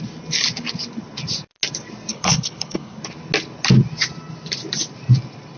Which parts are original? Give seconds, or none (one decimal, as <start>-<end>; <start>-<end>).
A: 0.0-2.1; 3.0-5.6